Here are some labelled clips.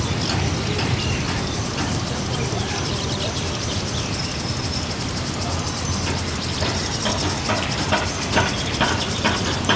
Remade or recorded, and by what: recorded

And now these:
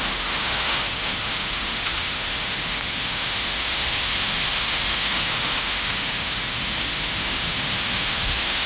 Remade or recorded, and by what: remade, autoencoder, DAC-VAE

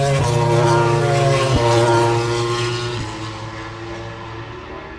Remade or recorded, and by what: recorded